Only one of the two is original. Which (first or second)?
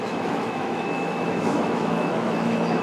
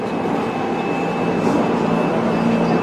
second